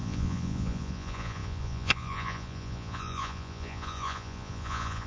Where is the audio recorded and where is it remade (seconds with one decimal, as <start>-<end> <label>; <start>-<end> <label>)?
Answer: 0.0-5.1 remade